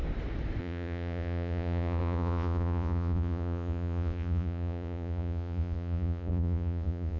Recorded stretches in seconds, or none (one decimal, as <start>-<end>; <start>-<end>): 0.0-0.6